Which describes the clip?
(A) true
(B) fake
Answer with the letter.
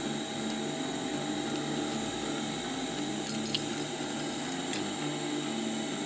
A